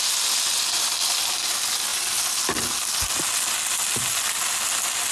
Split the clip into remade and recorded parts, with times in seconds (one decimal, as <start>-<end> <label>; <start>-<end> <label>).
0.0-5.1 recorded